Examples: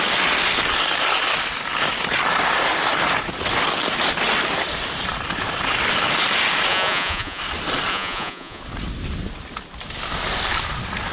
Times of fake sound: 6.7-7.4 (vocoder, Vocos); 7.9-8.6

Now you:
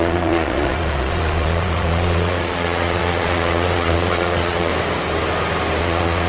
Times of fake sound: 0.0-4.7 (vocoder, Vocos); 5.8-6.3